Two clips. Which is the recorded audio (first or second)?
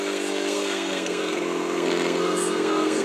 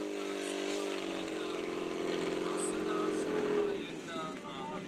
second